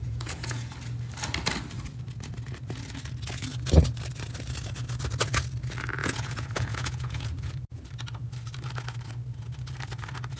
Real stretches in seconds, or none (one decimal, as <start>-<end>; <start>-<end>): 0.7-6.0; 7.8-10.4

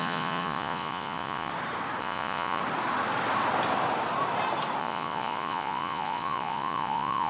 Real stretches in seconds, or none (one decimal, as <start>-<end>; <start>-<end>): 1.5-2.0; 2.6-4.8

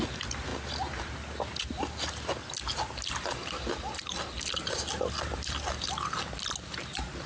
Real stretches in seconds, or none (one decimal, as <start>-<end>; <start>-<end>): 0.0-7.3

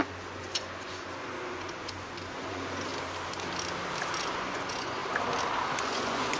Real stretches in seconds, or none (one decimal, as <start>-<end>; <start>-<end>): 2.9-4.2; 5.0-5.8

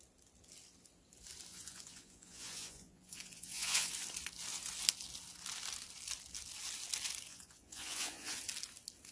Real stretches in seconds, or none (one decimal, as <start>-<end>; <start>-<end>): 0.0-1.5; 3.9-7.3; 8.4-9.1

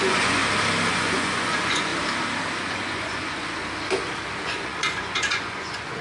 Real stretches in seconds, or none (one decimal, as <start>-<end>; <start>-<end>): 0.4-0.9; 1.9-2.6; 3.6-4.4

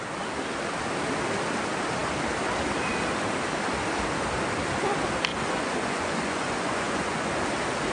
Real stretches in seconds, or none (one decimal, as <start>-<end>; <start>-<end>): 0.0-5.3; 7.4-7.9

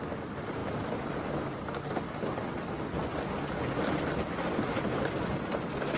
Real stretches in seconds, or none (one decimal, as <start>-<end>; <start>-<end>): 0.0-6.0